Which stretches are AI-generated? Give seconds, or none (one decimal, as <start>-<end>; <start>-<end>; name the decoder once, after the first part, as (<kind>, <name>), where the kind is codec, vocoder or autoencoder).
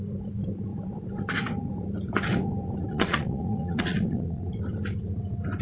2.8-4.5 (vocoder, Vocos)